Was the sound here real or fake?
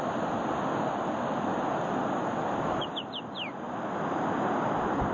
real